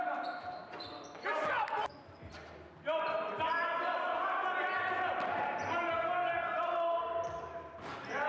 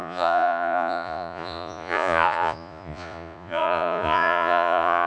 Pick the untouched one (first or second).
first